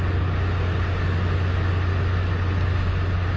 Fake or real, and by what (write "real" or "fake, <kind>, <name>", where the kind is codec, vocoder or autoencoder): real